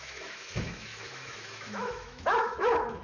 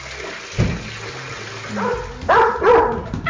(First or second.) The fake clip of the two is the first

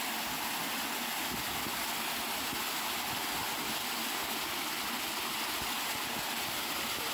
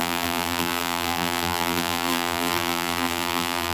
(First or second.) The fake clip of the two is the second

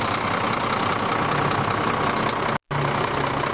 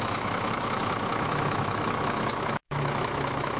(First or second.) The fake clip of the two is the second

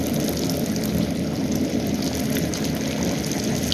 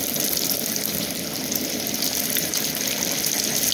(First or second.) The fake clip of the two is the second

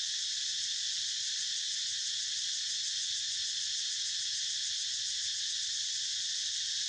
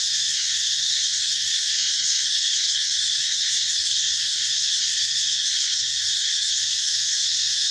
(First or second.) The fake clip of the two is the second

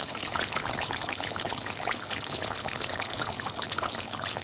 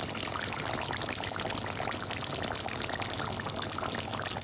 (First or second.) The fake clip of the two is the first